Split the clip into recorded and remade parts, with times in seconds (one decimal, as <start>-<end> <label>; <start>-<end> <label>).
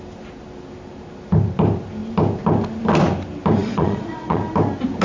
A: 0.0-3.6 recorded; 3.6-4.4 remade; 4.4-5.0 recorded